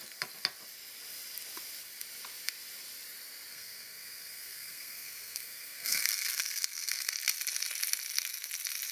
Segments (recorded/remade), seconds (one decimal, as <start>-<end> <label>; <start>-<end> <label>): 0.0-3.5 recorded; 3.5-7.1 remade; 7.1-8.9 recorded